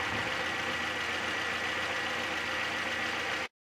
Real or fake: real